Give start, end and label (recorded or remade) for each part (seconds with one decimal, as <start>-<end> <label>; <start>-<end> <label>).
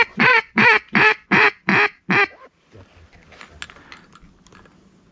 0.0-1.7 remade; 1.7-5.1 recorded